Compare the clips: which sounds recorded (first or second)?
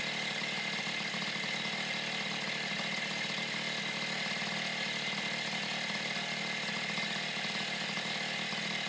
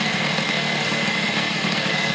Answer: first